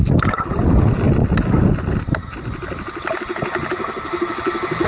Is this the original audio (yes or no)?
yes